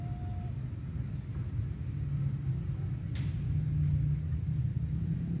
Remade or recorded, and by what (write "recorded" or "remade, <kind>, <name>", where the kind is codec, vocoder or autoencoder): recorded